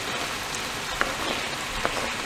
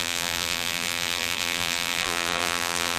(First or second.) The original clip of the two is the first